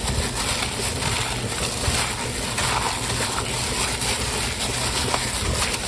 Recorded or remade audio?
recorded